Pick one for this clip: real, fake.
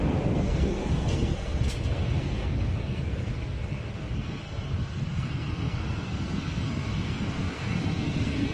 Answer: fake